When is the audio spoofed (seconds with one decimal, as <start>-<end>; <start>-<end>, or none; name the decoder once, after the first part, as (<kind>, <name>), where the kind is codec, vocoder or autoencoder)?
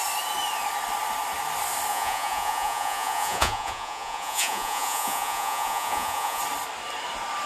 1.9-6.4 (vocoder, Vocos)